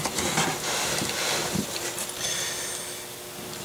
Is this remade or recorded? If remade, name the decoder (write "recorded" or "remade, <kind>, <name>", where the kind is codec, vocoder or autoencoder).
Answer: recorded